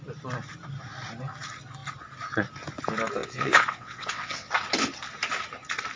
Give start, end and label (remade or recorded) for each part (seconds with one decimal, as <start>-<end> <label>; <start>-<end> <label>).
0.0-3.2 recorded; 3.2-4.5 remade; 4.5-6.0 recorded